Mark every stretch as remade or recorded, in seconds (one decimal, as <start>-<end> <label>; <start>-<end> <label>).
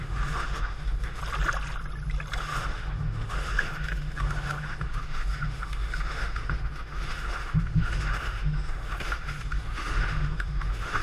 0.0-1.2 remade; 1.2-2.4 recorded; 2.4-11.0 remade